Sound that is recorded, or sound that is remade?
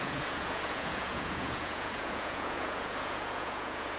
remade